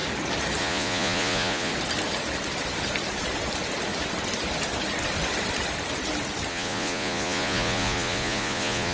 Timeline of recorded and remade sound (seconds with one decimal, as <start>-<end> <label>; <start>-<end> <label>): 0.0-0.6 recorded; 0.6-1.7 remade; 1.7-6.5 recorded; 6.5-8.9 remade